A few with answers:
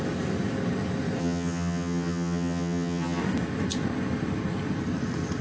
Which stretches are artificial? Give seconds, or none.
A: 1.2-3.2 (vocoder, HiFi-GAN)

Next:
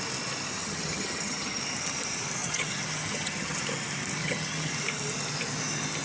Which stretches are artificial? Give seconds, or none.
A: 0.6-1.6 (vocoder, HiFi-GAN); 2.4-3.6; 4.2-4.7

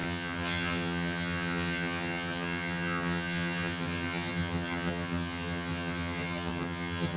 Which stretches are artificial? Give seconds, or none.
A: 0.0-7.2 (vocoder, HiFi-GAN)

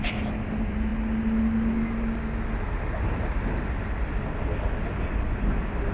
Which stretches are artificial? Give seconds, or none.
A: none

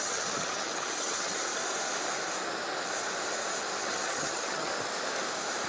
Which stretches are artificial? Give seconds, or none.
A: 0.0-1.5 (vocoder, HiFi-GAN); 3.8-4.7

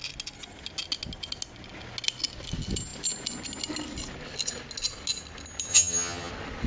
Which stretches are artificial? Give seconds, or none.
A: 5.7-6.3 (vocoder, HiFi-GAN)

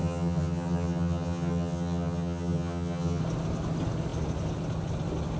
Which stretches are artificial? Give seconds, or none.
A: 0.0-3.2 (vocoder, HiFi-GAN)

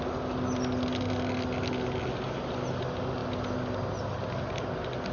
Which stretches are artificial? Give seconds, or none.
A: none